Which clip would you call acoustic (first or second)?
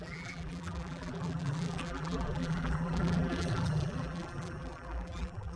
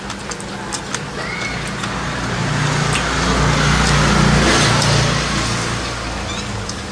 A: second